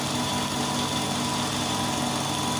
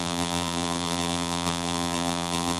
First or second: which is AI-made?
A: second